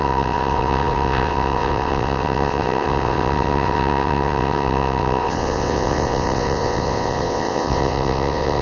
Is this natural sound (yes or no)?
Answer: no